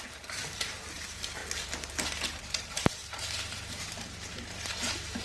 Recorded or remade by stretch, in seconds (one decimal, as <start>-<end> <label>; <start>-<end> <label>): 0.0-1.4 remade; 1.4-2.4 recorded; 2.4-5.2 remade